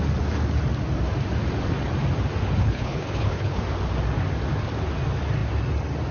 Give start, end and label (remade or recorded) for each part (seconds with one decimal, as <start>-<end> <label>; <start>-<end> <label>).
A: 0.0-2.6 recorded; 2.6-3.6 remade; 3.6-6.1 recorded